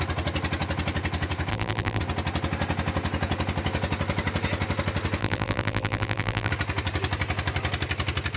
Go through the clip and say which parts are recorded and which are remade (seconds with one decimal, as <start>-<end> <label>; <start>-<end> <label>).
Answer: 0.0-1.5 recorded; 1.5-2.0 remade; 2.0-5.2 recorded; 5.2-6.5 remade; 6.5-8.4 recorded